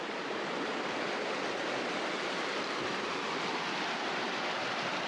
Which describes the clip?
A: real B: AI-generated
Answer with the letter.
A